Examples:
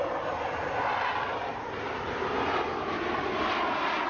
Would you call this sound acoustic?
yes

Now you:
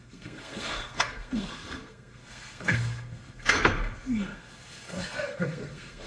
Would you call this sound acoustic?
no